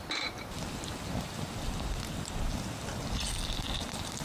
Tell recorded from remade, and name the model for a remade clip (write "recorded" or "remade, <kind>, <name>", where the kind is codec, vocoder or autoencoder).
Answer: recorded